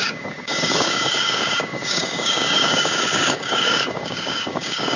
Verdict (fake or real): fake